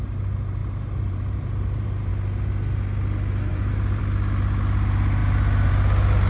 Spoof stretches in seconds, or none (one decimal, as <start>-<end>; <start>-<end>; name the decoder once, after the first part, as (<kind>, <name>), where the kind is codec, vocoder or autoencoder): 0.6-2.1 (vocoder, BigVGAN v2); 3.5-4.0

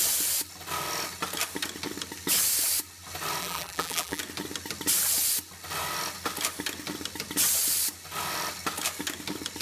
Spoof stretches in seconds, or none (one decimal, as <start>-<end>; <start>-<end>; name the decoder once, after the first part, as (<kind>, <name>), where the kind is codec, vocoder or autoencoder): 3.4-4.2 (vocoder, BigVGAN v2)

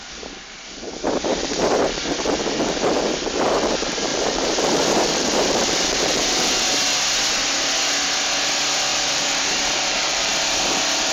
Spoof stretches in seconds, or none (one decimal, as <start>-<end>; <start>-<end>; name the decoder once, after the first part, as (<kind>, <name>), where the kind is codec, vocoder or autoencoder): 1.3-1.8 (vocoder, BigVGAN v2); 4.1-5.9; 8.9-10.3

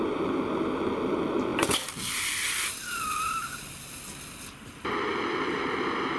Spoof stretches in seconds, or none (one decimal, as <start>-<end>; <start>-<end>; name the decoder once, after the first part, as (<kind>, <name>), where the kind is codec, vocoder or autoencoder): none

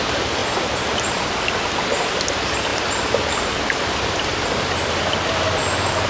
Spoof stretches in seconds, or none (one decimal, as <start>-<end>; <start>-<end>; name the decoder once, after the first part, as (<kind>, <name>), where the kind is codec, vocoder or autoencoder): 0.4-1.7 (vocoder, BigVGAN v2); 2.7-5.0

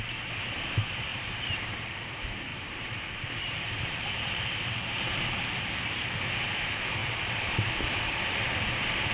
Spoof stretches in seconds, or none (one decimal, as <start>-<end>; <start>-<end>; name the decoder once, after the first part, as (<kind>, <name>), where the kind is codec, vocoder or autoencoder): 1.1-2.1 (vocoder, BigVGAN v2); 2.5-6.0; 7.0-7.7

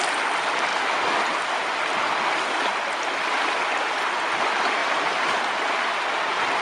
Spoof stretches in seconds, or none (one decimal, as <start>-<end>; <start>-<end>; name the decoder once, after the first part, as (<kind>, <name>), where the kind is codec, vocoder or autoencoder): 4.8-5.4 (vocoder, BigVGAN v2)

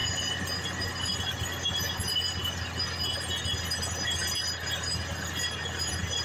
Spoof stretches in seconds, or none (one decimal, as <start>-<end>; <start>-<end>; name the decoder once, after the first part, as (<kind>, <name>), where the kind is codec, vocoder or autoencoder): none